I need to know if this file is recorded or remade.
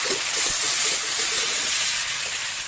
remade